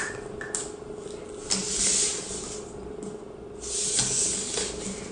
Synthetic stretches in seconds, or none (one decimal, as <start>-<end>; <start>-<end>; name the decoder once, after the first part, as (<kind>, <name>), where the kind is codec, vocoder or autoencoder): none